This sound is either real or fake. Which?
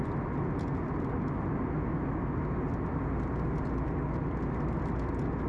real